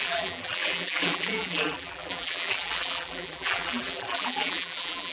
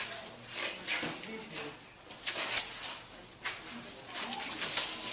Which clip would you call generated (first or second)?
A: first